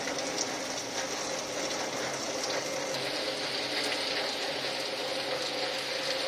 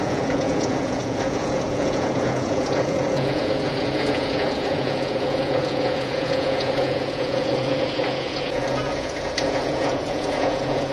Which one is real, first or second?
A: first